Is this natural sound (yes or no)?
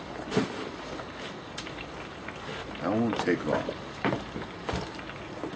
yes